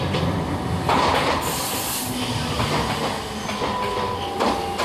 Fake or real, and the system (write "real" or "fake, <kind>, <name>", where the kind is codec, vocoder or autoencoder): real